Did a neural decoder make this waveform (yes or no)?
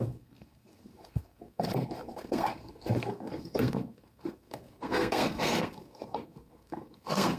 yes